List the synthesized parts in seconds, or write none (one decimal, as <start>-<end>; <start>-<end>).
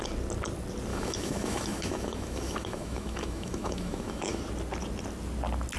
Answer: 0.9-4.4